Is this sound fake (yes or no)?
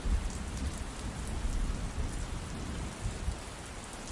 no